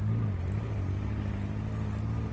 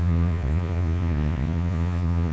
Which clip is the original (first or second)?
first